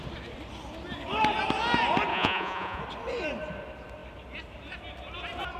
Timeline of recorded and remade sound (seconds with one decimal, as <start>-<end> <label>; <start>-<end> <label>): 0.0-2.1 recorded; 2.1-2.8 remade; 2.8-5.6 recorded